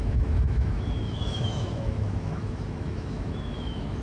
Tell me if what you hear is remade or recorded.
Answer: remade